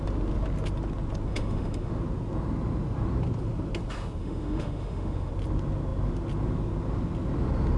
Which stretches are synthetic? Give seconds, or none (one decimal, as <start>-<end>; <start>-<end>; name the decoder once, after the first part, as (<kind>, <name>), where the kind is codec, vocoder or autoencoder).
1.3-1.9 (autoencoder, DAC-VAE); 4.2-5.3